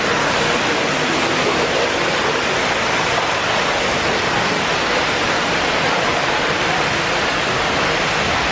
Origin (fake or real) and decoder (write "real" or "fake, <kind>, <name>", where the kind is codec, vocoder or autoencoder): real